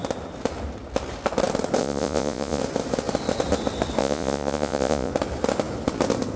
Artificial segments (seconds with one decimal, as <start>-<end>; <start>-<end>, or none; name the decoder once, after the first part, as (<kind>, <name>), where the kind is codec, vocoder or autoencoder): 1.8-2.6 (vocoder, Vocos); 4.0-5.1